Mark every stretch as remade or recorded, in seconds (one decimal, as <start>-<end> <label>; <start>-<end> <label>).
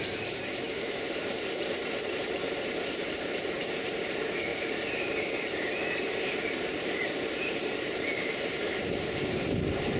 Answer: 0.0-10.0 remade